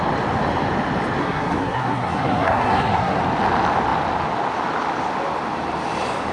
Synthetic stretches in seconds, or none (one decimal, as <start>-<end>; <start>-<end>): 1.2-3.2